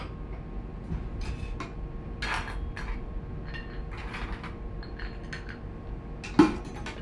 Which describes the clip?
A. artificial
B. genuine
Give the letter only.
B